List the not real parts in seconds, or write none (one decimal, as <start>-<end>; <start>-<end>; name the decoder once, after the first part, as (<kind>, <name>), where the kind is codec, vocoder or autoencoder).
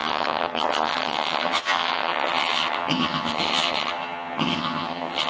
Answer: 0.0-5.3 (vocoder, HiFi-GAN)